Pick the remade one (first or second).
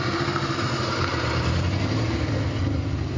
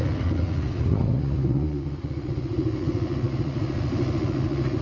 second